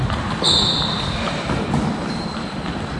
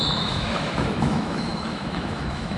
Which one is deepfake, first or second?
second